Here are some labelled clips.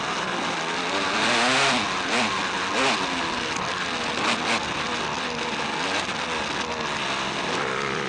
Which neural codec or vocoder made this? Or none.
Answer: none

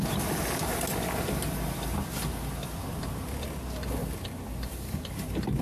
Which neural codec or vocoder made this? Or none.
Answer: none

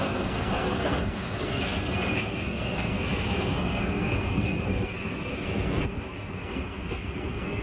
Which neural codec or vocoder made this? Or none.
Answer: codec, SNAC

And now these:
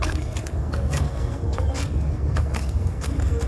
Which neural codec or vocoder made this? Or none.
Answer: codec, SNAC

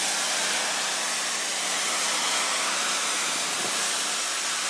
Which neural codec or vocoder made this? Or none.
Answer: none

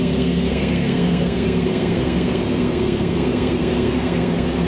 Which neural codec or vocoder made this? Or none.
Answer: codec, SNAC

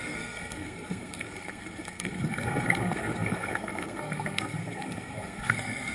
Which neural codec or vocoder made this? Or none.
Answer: codec, SNAC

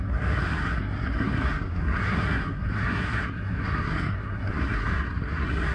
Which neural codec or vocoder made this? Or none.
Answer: codec, SNAC